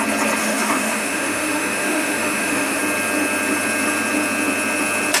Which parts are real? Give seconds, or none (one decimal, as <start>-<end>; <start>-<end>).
0.0-0.4; 2.8-5.2